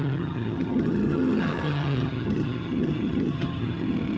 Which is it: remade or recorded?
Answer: remade